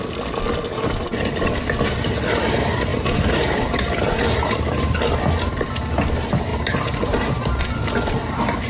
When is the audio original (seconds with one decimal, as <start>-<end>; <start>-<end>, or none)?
0.0-0.7; 1.6-2.9; 4.9-6.5; 7.6-8.7